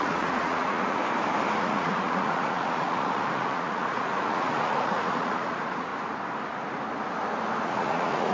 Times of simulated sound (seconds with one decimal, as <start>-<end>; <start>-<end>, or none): 0.0-1.0; 1.6-5.9; 7.6-8.3